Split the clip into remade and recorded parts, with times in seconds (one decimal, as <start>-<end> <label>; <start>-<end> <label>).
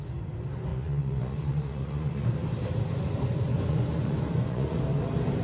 0.0-0.7 recorded; 0.7-2.3 remade; 2.3-3.5 recorded; 3.5-4.8 remade; 4.8-5.4 recorded